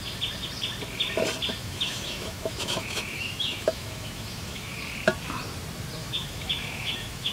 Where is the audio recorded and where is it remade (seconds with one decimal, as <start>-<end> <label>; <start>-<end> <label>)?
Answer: 0.0-1.6 recorded; 1.6-4.8 remade; 4.8-6.0 recorded; 6.0-7.3 remade

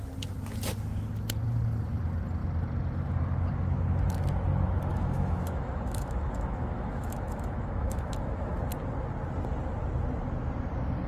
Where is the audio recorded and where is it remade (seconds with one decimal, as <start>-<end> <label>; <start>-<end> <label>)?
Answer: 0.0-4.9 recorded; 4.9-8.5 remade; 8.5-11.1 recorded

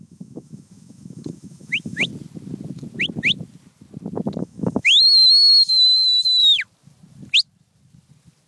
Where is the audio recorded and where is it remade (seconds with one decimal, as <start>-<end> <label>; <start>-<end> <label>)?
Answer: 0.0-2.1 remade; 2.1-4.4 recorded; 4.4-6.4 remade; 6.4-8.5 recorded

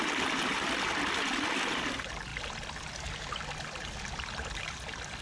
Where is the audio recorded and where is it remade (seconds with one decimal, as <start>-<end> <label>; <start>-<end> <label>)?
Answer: 0.0-5.2 recorded